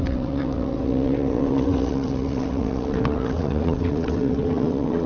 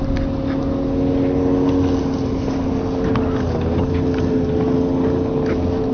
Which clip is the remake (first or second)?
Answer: first